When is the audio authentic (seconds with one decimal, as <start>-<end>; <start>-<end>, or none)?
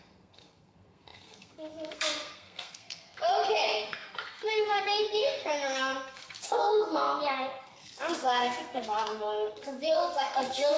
none